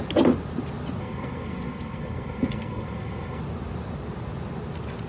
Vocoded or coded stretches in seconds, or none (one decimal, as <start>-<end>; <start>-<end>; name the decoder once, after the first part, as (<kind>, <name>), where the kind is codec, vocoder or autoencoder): 1.0-3.4 (codec, SNAC)